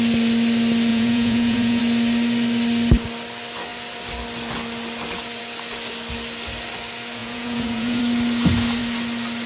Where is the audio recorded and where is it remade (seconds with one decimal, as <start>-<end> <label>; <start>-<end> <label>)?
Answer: 0.0-0.9 recorded; 0.9-1.8 remade; 1.8-7.2 recorded; 7.2-8.0 remade; 8.0-9.5 recorded